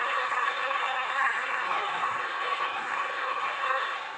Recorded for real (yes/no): no